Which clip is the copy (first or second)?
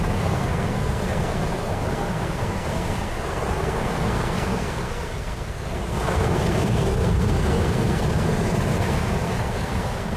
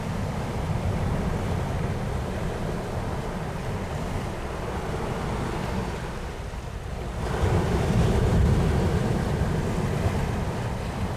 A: first